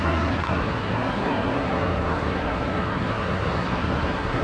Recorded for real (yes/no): no